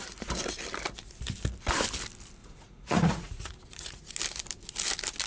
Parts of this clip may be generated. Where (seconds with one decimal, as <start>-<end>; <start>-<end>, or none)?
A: 2.4-4.1